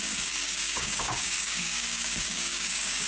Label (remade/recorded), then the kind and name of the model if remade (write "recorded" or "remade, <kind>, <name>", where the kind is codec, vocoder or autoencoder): remade, codec, DAC